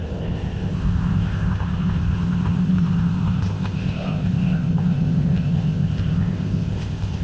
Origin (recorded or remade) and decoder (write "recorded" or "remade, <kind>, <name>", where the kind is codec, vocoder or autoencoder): remade, codec, ZipCodec